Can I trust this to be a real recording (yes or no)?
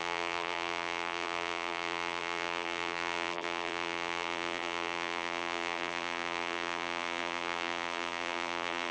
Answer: no